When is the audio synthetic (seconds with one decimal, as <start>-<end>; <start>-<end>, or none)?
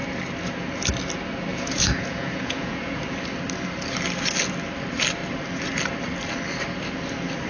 1.5-3.0